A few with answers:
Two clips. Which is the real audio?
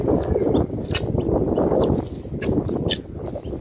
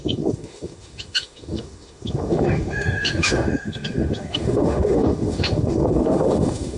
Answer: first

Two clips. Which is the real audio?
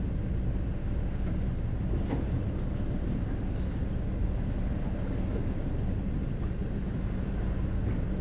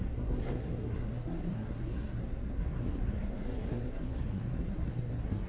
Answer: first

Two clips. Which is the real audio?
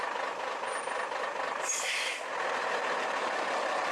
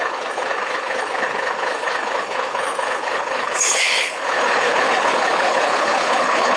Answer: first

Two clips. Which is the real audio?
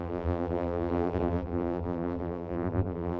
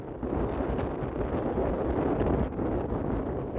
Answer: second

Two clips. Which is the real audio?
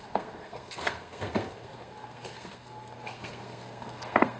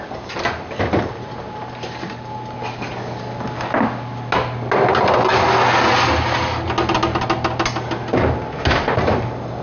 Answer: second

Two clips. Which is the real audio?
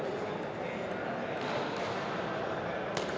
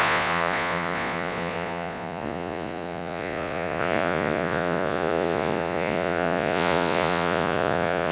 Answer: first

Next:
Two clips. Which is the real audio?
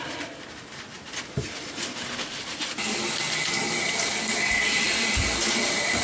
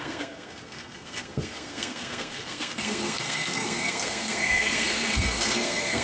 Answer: first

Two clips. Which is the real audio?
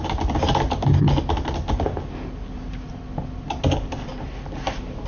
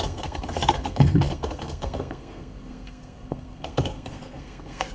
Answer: first